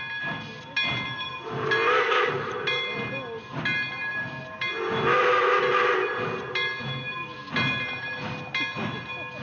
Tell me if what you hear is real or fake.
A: real